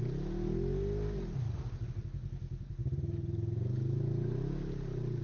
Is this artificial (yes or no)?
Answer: no